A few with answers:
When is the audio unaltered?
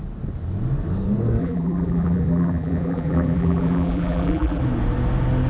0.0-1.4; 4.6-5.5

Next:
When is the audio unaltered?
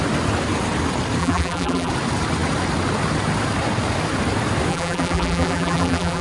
0.0-1.2; 1.9-4.7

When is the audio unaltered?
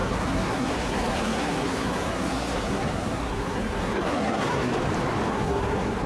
4.7-5.3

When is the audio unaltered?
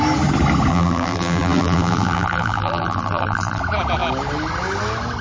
0.0-0.7; 3.6-5.2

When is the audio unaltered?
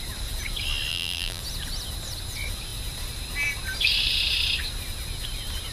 0.0-0.9; 1.4-5.7